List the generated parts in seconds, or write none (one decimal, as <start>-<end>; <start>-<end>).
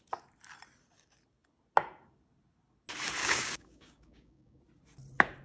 3.2-4.6